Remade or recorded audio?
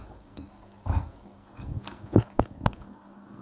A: remade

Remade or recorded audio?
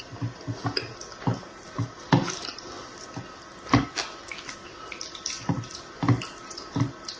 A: recorded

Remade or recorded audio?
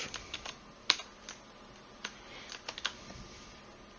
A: recorded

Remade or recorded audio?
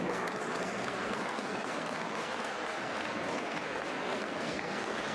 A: remade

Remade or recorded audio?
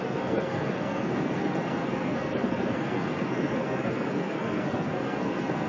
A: remade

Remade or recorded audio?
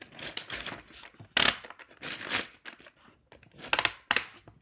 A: recorded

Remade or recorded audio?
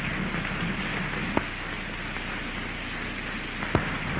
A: recorded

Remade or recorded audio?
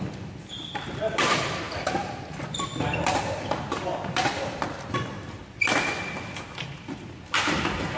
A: recorded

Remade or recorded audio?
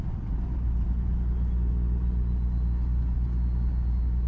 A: recorded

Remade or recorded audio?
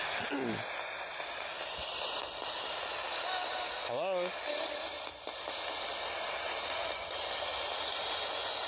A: recorded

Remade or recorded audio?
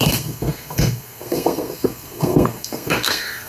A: remade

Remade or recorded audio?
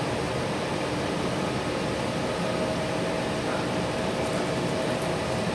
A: recorded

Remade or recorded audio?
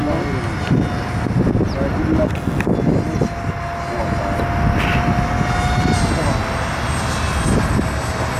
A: recorded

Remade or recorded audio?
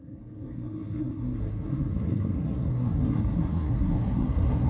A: remade